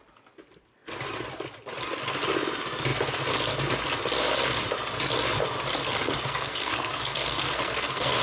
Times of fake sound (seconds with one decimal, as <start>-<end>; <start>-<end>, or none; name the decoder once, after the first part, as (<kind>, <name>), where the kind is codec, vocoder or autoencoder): 5.8-8.2 (codec, SNAC)